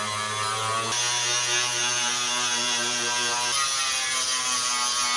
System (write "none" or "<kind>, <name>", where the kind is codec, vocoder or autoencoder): none